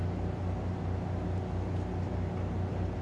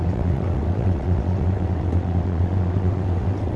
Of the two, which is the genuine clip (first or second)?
first